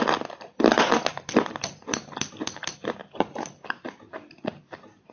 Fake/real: real